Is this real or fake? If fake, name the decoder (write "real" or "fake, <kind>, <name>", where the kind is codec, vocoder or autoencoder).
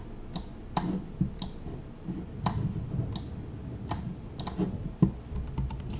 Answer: real